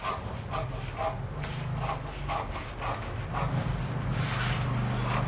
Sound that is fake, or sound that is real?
real